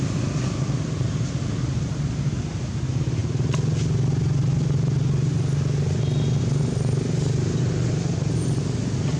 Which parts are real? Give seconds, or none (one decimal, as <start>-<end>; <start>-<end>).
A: 0.0-9.2